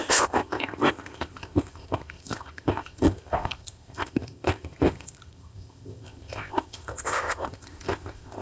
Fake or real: fake